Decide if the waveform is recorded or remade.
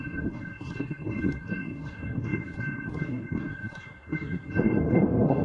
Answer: remade